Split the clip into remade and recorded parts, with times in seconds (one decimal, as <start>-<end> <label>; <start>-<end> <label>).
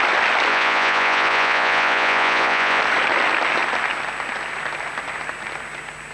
0.0-0.5 recorded; 0.5-2.8 remade; 2.8-6.1 recorded